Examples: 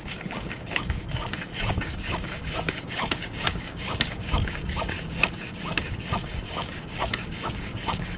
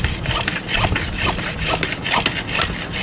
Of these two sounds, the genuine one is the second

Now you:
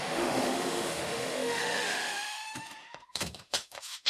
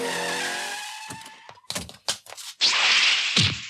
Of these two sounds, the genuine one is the second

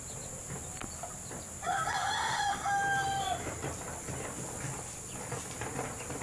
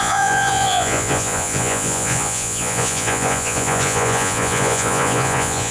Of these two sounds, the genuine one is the first